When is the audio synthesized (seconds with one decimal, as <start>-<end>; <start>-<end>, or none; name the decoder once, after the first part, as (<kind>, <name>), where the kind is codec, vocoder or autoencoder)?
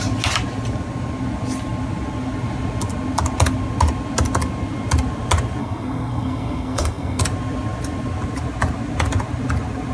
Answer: 5.6-7.2 (codec, SNAC)